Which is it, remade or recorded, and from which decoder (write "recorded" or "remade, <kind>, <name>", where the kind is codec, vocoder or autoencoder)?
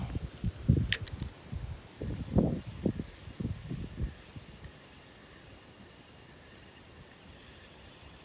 recorded